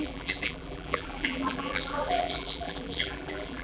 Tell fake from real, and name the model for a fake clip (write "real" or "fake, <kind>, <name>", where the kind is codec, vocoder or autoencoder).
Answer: fake, vocoder, BigVGAN v2